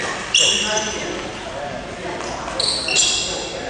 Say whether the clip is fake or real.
real